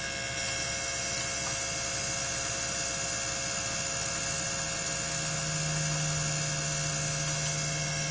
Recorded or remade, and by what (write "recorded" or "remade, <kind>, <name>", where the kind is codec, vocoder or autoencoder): recorded